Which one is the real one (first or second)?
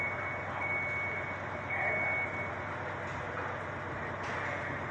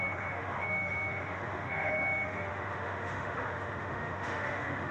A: first